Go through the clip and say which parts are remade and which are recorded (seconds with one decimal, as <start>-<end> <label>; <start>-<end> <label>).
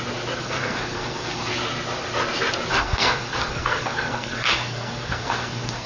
0.0-0.4 recorded; 0.4-1.5 remade; 1.5-2.7 recorded; 2.7-5.9 remade